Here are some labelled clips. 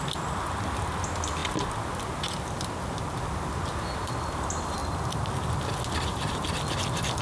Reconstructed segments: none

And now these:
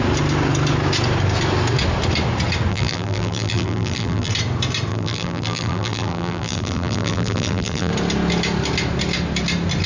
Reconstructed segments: 2.7-4.3; 4.9-7.9

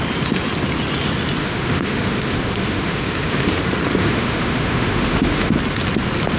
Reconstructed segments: 1.4-3.6; 4.0-5.5